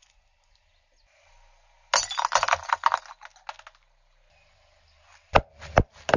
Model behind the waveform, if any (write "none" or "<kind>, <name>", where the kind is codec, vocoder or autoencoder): none